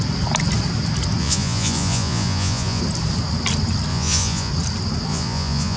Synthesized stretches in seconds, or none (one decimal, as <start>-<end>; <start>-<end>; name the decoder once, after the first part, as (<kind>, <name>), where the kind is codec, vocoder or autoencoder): 1.2-2.8 (vocoder, Vocos); 3.9-4.5; 5.1-5.8